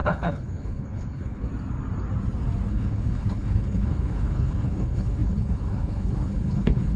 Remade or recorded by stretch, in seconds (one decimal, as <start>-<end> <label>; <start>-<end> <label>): 0.0-1.5 remade; 1.5-2.7 recorded; 2.7-7.0 remade